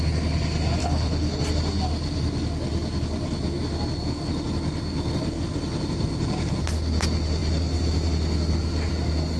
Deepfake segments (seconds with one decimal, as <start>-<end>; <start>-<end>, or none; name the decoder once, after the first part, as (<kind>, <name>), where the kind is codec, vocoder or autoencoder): 0.8-1.4 (codec, HILCodec)